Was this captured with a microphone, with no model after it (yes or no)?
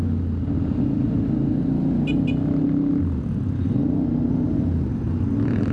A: yes